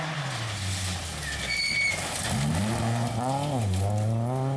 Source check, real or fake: real